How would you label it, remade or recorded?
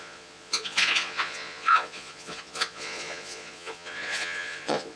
remade